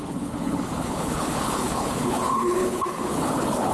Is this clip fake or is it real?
fake